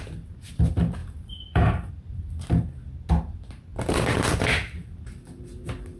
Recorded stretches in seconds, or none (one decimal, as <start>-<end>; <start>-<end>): 0.0-1.0; 1.9-3.7